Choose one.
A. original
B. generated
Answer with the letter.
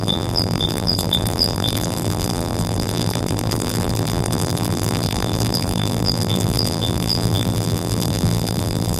B